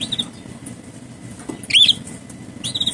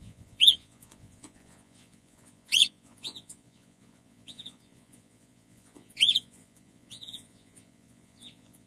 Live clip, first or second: first